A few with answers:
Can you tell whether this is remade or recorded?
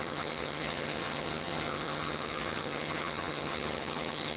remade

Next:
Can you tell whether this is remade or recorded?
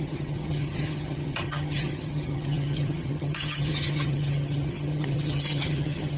remade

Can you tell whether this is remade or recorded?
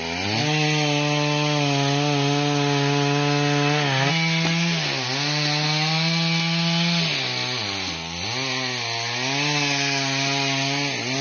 recorded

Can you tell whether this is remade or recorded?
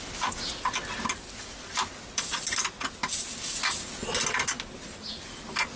recorded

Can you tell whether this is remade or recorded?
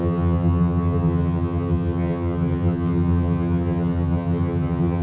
remade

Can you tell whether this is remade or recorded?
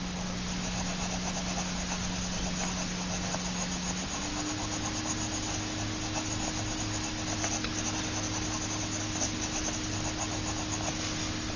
recorded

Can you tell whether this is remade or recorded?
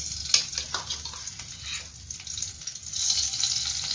recorded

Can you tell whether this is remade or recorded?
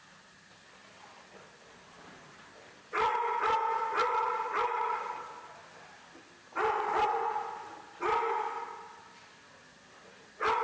recorded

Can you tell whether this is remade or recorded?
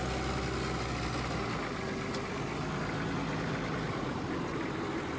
recorded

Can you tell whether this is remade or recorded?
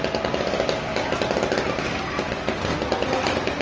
recorded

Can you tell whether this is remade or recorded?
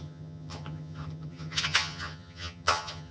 remade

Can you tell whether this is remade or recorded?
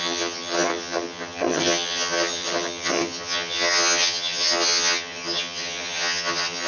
remade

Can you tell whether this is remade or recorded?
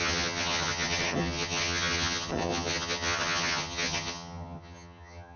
remade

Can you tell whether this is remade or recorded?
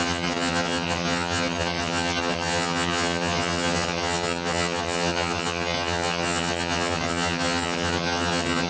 remade